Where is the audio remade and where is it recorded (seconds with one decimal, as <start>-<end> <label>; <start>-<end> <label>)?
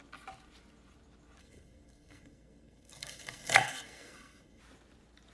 0.0-1.4 recorded; 1.4-4.6 remade; 4.6-5.3 recorded